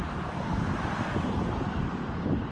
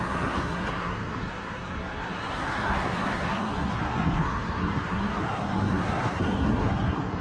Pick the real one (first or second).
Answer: first